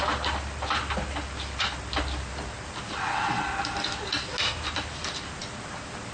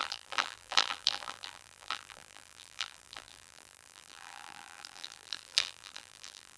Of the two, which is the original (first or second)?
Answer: first